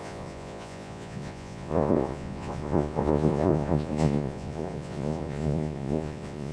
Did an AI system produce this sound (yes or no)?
yes